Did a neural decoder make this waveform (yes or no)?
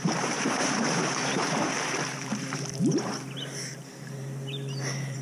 yes